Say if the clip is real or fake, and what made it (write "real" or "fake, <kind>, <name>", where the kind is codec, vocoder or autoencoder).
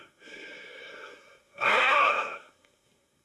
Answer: fake, codec, SNAC